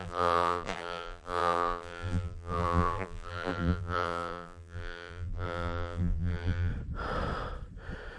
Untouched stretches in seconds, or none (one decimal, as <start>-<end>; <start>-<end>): 6.7-8.2